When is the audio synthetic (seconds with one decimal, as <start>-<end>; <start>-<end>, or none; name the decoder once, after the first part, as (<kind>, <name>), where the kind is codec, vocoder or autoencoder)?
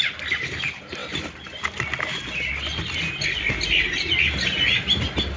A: none